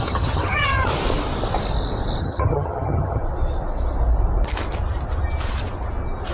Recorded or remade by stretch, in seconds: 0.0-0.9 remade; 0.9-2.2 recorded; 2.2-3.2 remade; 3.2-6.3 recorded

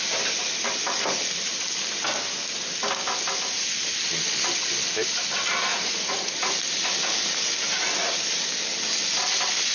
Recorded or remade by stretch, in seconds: 0.0-5.7 recorded; 5.7-6.5 remade; 6.5-9.7 recorded

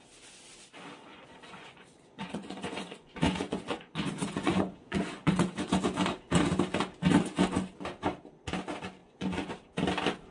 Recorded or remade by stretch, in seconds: 0.0-1.1 recorded; 1.1-5.7 remade; 5.7-9.0 recorded; 9.0-9.5 remade; 9.5-10.3 recorded

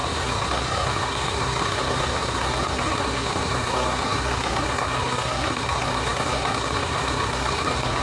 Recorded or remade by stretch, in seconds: 0.0-8.0 remade

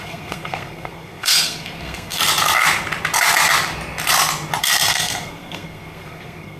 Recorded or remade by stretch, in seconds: 0.0-2.2 remade; 2.2-4.6 recorded; 4.6-6.6 remade

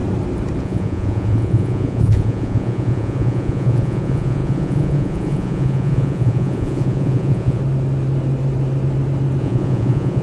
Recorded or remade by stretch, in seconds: 0.0-0.6 recorded; 0.6-7.6 remade; 7.6-9.4 recorded; 9.4-10.2 remade

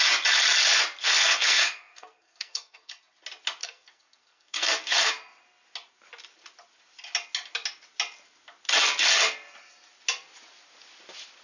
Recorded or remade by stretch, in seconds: 0.0-1.0 recorded; 1.0-2.9 remade; 2.9-3.6 recorded; 3.6-5.1 remade; 5.1-11.4 recorded

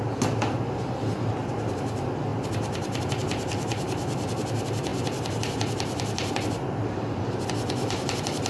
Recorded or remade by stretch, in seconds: 0.0-8.5 recorded